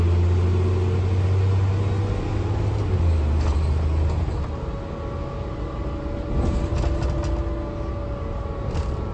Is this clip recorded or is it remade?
recorded